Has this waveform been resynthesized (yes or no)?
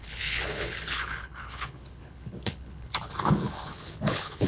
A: yes